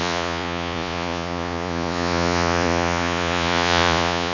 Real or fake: fake